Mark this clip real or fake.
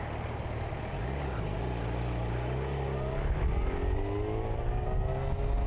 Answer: real